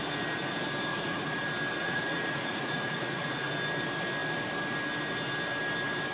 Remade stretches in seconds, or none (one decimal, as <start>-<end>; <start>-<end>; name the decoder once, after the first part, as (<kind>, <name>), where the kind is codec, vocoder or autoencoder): 0.9-1.4 (vocoder, Vocos); 1.8-3.5